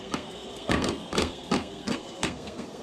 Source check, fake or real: fake